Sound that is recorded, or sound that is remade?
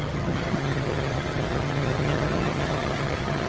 remade